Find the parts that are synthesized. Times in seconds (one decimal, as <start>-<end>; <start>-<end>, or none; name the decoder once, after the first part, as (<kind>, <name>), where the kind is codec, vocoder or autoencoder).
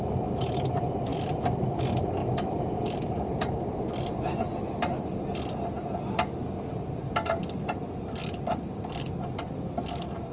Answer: 1.1-1.8 (vocoder, BigVGAN v2); 2.2-5.2; 8.2-9.0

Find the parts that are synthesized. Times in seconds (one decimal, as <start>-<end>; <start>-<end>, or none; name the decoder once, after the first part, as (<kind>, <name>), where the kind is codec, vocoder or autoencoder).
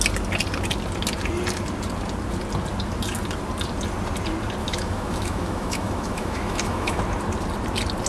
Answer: 4.6-7.0 (autoencoder, DAC-VAE)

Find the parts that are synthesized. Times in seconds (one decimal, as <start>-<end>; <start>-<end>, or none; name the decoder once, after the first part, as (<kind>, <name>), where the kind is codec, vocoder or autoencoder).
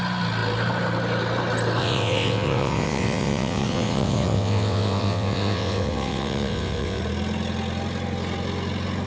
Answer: 1.8-7.0 (vocoder, WaveNeXt)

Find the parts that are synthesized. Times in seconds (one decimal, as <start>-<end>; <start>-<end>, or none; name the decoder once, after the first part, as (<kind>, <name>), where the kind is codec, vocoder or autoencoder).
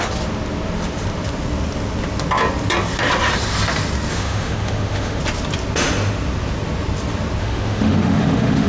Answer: 4.1-5.2 (autoencoder, DAC-VAE); 7.4-8.7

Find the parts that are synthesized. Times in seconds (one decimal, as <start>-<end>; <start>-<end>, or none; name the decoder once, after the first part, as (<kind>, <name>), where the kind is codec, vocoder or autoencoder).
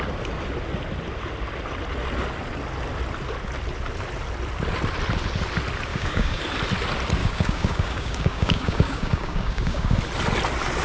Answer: 5.9-6.4 (codec, DAC); 7.2-10.0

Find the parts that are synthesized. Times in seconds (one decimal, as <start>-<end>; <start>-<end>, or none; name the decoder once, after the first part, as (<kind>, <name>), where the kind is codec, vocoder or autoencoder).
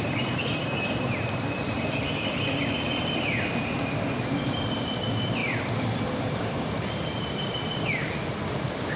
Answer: 0.0-9.0 (vocoder, BigVGAN v2)